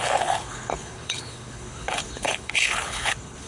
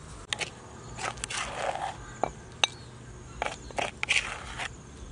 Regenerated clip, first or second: first